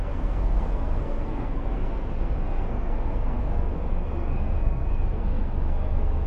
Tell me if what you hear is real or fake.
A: fake